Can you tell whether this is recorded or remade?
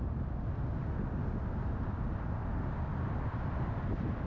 recorded